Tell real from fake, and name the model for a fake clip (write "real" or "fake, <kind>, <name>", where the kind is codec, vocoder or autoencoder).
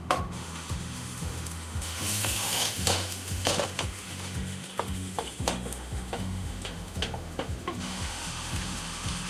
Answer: fake, autoencoder, DAC-VAE